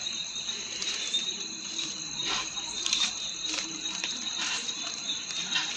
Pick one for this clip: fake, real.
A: fake